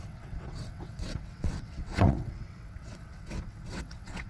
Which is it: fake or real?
fake